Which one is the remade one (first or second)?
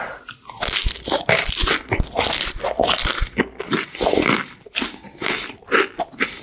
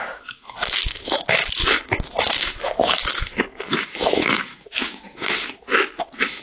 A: second